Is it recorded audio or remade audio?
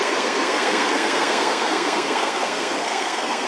remade